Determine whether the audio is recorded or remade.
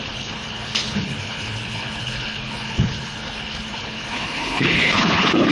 remade